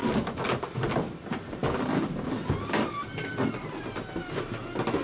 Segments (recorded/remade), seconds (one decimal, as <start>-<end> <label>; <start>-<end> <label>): 0.0-5.0 recorded